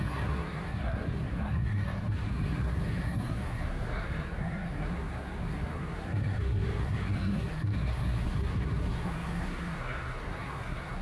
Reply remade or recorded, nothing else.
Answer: remade